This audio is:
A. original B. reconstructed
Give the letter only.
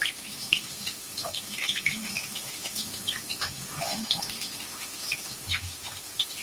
B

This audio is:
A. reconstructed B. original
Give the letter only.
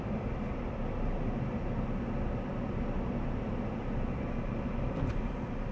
B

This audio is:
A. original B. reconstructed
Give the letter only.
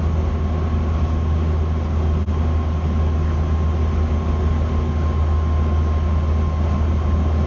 A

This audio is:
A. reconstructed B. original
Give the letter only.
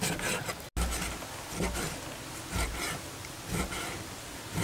B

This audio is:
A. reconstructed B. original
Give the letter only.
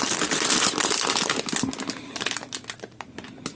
B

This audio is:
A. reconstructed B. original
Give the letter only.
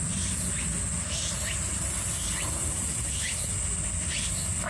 B